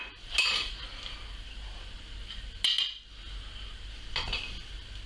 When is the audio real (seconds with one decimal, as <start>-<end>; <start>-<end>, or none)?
0.0-5.1